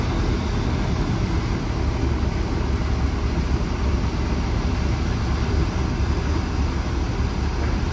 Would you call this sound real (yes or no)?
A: yes